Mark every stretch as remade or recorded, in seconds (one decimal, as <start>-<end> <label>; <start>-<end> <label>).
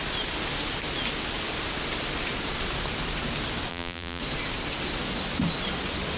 0.0-3.7 recorded; 3.7-4.2 remade; 4.2-6.2 recorded